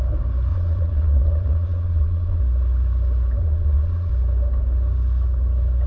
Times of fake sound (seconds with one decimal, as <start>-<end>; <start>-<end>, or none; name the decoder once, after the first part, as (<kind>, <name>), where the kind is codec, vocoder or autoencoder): 0.5-2.4 (vocoder, Vocos); 3.4-4.1